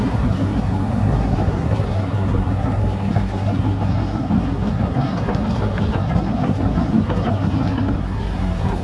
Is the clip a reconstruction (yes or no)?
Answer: yes